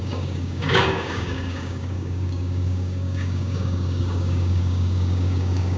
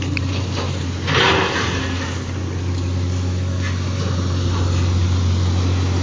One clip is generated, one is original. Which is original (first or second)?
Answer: second